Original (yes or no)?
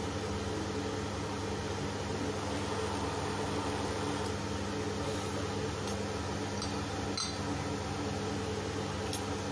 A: yes